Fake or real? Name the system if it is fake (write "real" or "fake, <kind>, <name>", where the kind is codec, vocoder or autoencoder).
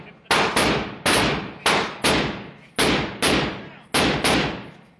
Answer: real